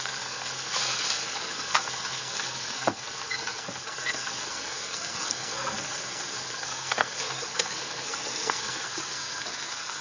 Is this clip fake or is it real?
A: fake